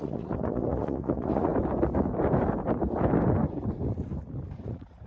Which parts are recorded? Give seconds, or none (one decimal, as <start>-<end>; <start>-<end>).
1.5-4.6

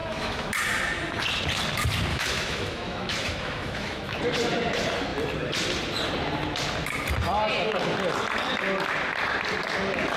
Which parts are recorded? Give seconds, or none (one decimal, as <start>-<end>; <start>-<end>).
0.5-2.1; 4.2-10.2

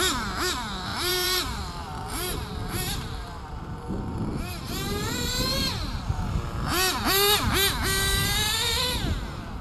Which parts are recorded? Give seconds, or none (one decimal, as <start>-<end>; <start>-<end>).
0.0-0.9; 3.8-9.6

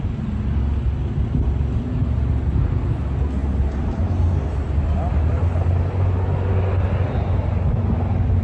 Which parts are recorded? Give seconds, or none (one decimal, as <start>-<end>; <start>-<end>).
0.0-8.4

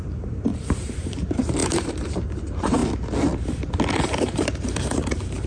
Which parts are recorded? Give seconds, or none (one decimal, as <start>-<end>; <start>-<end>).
2.8-3.9

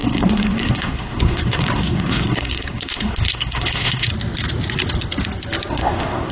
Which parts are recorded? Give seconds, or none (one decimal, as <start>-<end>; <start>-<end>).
4.1-5.7